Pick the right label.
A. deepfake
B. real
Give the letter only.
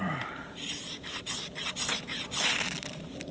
B